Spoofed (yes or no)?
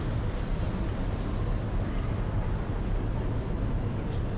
no